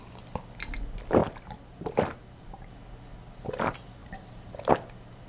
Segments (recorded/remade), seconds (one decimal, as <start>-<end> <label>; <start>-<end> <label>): 0.0-1.2 recorded; 1.2-2.7 remade; 2.7-4.0 recorded; 4.0-4.5 remade; 4.5-5.3 recorded